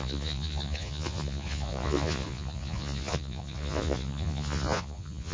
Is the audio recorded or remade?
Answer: remade